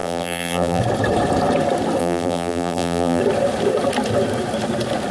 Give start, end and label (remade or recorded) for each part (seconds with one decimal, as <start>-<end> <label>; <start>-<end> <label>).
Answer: 0.0-0.8 remade; 0.8-2.0 recorded; 2.0-3.2 remade; 3.2-5.1 recorded